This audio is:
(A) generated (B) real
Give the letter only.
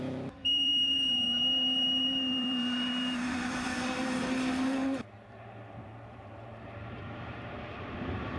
A